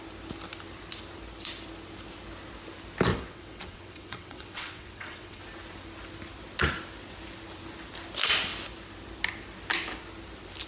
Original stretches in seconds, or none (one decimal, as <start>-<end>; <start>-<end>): 0.0-3.1; 5.4-10.7